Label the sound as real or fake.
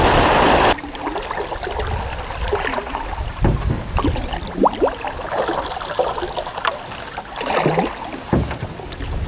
real